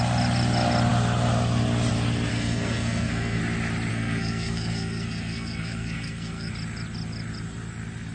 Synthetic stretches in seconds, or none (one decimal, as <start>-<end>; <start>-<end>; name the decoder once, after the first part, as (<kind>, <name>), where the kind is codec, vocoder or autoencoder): 2.3-3.4 (codec, SNAC); 3.9-6.5